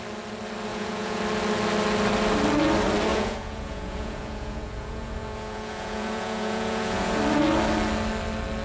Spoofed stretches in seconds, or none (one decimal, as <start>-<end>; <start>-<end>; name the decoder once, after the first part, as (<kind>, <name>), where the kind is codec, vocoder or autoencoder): 0.7-1.2 (vocoder, Vocos); 3.1-7.2